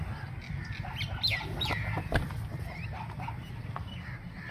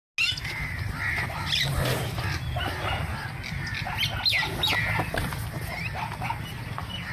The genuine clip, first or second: second